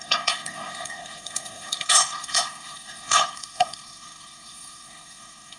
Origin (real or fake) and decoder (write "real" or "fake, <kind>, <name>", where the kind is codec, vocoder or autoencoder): fake, codec, SNAC